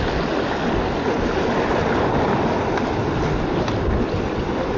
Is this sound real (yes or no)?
yes